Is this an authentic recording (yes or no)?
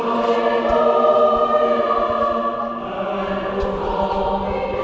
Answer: yes